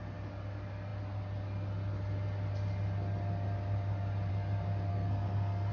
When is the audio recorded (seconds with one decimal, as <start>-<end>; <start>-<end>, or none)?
0.0-4.9